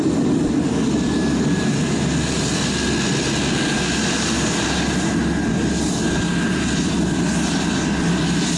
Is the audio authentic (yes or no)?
yes